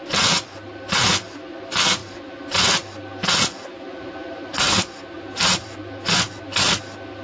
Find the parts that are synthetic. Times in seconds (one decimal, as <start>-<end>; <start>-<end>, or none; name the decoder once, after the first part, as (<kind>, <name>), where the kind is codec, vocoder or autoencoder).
none